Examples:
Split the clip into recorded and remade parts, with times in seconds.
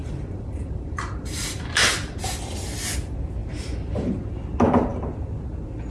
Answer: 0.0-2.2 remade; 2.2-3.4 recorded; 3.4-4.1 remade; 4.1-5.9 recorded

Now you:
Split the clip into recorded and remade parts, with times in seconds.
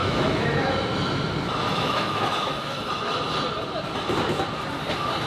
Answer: 0.0-0.7 remade; 0.7-1.7 recorded; 1.7-2.8 remade; 2.8-5.3 recorded